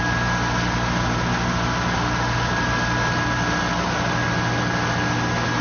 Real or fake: real